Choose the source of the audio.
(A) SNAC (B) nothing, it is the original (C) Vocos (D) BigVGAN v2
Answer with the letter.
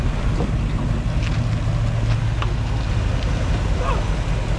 B